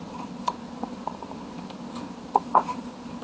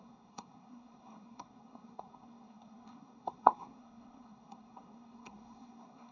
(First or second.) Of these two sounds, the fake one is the second